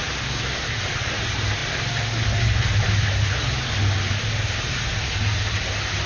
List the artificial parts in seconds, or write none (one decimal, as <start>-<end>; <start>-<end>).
none